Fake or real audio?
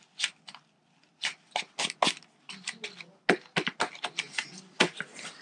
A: real